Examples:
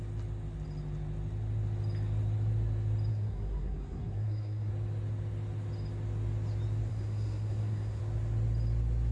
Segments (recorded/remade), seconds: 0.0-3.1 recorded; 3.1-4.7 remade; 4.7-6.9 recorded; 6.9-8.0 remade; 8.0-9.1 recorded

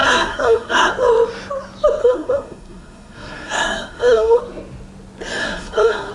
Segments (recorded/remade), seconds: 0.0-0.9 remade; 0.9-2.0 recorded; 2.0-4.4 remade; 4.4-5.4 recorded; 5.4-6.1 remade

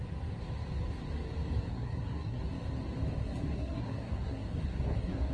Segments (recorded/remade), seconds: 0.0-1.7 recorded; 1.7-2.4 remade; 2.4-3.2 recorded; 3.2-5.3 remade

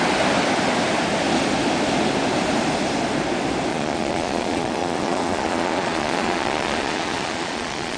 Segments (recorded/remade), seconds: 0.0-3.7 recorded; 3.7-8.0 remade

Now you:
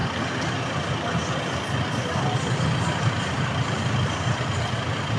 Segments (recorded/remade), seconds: 0.0-5.2 recorded

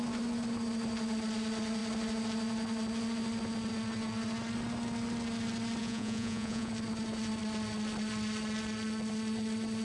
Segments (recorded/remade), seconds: 0.0-5.8 recorded; 5.8-6.7 remade; 6.7-9.8 recorded

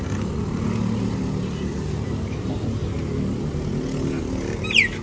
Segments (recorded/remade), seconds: 0.0-5.0 recorded

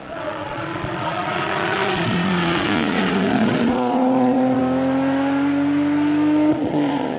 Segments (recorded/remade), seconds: 0.0-4.6 remade; 4.6-6.5 recorded; 6.5-7.2 remade